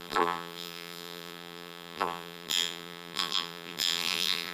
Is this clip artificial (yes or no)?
yes